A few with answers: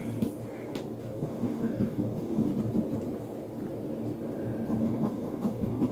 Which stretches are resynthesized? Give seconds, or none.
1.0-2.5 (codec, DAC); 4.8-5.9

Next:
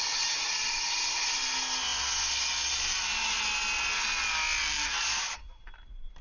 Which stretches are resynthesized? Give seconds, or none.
none

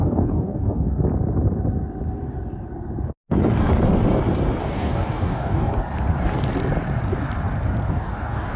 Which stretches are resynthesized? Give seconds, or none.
0.0-1.1 (codec, DAC); 4.6-5.7; 7.9-8.6

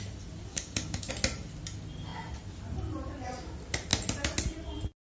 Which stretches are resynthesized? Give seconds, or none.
0.5-1.1 (codec, DAC)